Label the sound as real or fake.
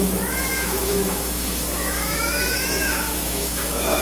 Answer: fake